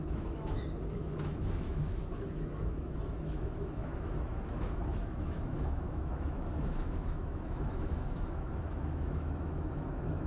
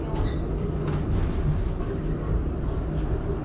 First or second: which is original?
second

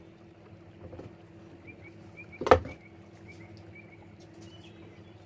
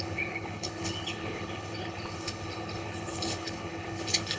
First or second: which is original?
first